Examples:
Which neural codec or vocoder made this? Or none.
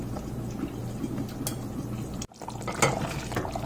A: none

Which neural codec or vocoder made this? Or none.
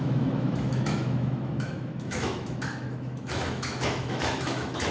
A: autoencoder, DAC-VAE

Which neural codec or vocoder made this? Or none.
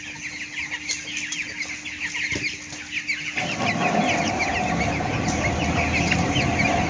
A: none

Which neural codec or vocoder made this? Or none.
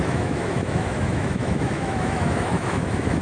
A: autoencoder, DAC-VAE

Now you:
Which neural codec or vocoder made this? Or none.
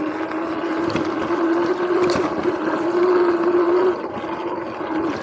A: none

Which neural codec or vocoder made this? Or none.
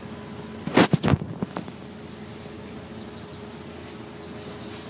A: none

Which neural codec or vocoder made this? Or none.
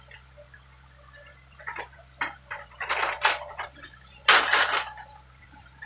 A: none